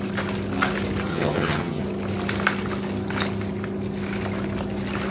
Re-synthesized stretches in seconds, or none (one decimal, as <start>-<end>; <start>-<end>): 1.1-1.8